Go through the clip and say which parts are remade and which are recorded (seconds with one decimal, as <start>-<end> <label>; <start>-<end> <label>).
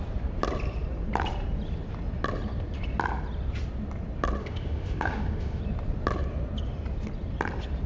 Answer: 0.0-4.4 recorded; 4.4-5.6 remade; 5.6-7.9 recorded